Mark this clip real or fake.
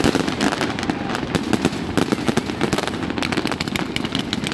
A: real